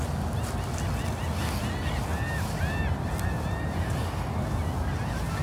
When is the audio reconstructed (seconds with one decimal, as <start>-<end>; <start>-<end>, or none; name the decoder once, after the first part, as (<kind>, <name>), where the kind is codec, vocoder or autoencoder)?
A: none